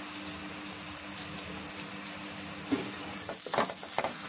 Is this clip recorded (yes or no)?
yes